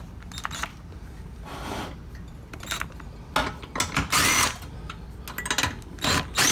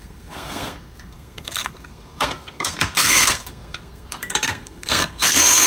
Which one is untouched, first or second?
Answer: first